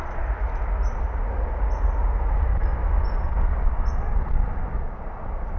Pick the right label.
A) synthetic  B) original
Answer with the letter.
B